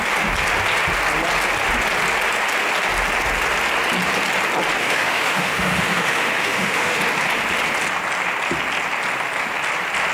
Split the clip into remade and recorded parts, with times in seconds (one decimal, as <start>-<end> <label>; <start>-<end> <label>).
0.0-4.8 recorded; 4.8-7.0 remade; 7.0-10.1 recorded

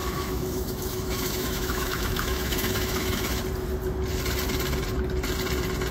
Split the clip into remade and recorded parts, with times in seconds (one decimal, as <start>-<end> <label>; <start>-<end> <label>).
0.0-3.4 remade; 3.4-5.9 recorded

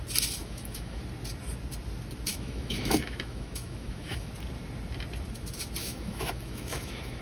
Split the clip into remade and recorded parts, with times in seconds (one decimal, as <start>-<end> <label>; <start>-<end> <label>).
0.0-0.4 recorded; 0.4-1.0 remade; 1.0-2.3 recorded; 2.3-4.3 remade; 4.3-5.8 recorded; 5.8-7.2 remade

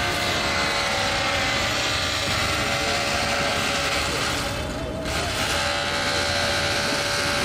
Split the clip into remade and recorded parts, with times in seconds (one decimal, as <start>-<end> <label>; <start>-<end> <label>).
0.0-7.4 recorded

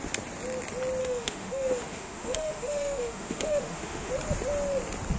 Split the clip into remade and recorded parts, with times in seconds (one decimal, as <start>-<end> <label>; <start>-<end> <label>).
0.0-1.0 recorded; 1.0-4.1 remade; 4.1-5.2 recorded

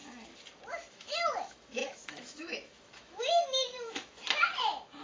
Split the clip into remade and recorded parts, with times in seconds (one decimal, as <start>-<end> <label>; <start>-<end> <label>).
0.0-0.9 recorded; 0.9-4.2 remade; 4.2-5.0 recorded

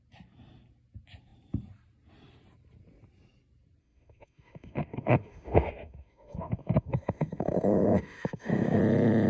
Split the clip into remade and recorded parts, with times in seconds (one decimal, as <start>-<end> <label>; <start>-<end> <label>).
0.0-3.8 recorded; 3.8-8.8 remade; 8.8-9.3 recorded